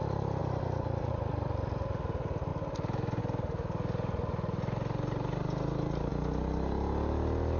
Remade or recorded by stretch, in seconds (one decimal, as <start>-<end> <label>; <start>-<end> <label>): 0.0-7.6 recorded